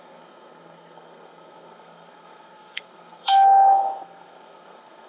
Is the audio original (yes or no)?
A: no